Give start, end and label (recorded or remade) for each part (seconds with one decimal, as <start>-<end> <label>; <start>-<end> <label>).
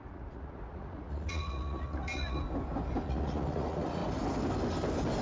0.0-2.4 remade; 2.4-3.0 recorded; 3.0-4.0 remade; 4.0-5.2 recorded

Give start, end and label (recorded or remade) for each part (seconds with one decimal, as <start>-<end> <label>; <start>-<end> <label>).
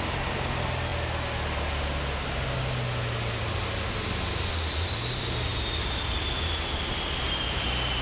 0.0-8.0 recorded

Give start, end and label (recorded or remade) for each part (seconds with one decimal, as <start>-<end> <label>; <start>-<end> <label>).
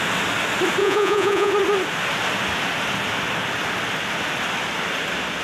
0.0-0.8 recorded; 0.8-1.5 remade; 1.5-5.4 recorded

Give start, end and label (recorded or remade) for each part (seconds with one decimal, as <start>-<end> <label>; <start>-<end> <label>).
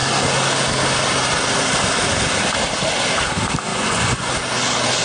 0.0-3.7 recorded; 3.7-4.3 remade; 4.3-5.0 recorded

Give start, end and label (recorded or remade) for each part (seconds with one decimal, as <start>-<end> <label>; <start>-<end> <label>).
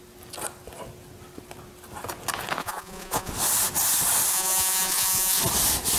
0.0-2.6 recorded; 2.6-3.3 remade; 3.3-4.3 recorded; 4.3-5.4 remade; 5.4-6.0 recorded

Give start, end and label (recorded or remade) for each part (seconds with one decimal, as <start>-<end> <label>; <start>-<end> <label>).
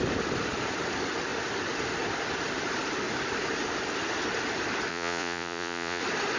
0.0-4.9 recorded; 4.9-6.0 remade; 6.0-6.4 recorded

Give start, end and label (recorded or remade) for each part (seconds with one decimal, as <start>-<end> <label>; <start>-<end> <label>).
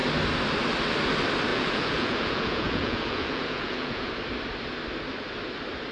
0.0-1.5 recorded; 1.5-4.1 remade; 4.1-5.9 recorded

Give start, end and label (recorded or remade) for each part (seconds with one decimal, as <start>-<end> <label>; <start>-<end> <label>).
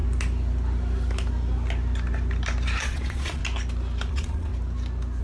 0.0-2.8 recorded; 2.8-3.4 remade; 3.4-4.1 recorded; 4.1-4.5 remade; 4.5-5.2 recorded